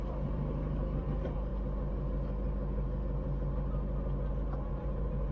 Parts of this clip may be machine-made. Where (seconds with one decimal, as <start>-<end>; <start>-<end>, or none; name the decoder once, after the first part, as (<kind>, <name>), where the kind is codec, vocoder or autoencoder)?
0.0-1.5 (vocoder, BigVGAN v2); 4.7-5.3